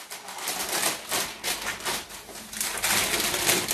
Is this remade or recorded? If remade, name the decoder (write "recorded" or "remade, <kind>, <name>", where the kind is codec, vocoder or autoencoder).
recorded